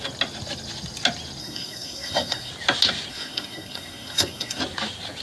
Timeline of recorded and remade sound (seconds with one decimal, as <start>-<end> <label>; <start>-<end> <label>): 0.0-1.4 recorded; 1.4-2.5 remade; 2.5-3.1 recorded; 3.1-4.6 remade; 4.6-5.2 recorded

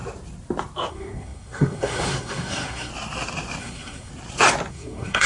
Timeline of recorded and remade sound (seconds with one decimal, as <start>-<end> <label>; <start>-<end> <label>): 0.0-0.9 recorded; 0.9-2.9 remade; 2.9-3.6 recorded; 3.6-4.1 remade; 4.1-4.7 recorded; 4.7-5.3 remade

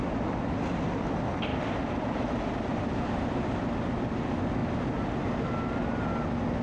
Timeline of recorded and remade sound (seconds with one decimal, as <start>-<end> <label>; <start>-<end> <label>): 0.0-6.6 recorded